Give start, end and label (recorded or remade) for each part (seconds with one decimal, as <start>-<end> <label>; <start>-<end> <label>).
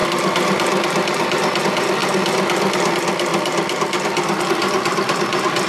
0.0-5.7 recorded